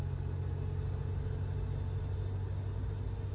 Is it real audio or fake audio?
real